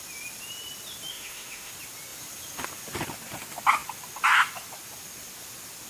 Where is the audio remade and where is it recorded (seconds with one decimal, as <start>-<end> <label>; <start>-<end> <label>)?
0.0-1.1 recorded; 1.1-1.7 remade; 1.7-5.9 recorded

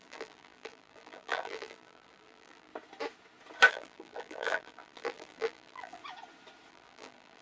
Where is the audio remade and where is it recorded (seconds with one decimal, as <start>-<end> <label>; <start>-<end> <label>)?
0.0-2.7 remade; 2.7-3.7 recorded; 3.7-6.0 remade; 6.0-6.7 recorded; 6.7-7.4 remade

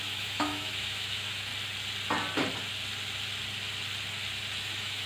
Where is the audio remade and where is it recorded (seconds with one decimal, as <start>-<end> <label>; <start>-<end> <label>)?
0.0-1.5 remade; 1.5-4.6 recorded; 4.6-5.1 remade

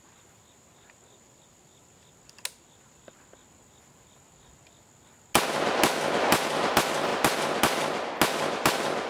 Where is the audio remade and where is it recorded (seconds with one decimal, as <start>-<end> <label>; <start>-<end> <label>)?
0.0-9.1 recorded

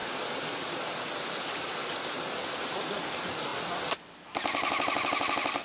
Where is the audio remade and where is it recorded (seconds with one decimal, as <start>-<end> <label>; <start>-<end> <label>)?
0.0-5.6 recorded

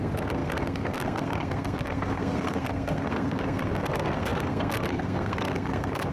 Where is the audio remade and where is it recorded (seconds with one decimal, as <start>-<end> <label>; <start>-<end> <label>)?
0.0-6.1 remade

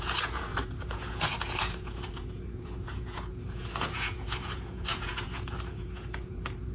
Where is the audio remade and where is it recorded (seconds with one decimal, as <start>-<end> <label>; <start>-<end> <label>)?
0.0-6.7 remade